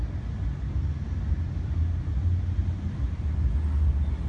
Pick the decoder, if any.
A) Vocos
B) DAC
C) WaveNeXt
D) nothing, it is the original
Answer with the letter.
D